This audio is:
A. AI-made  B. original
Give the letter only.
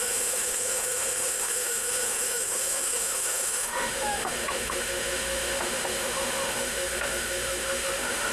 A